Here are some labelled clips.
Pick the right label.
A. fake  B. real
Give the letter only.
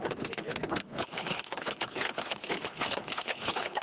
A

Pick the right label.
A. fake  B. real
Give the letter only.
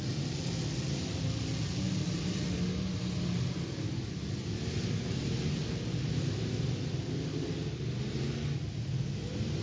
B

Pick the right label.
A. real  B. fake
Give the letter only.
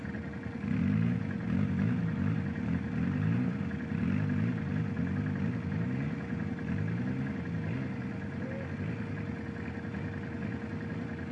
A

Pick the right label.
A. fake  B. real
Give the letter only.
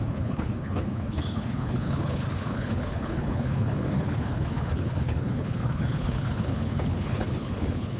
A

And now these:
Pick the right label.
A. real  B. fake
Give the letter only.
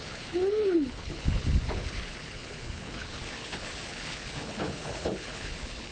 B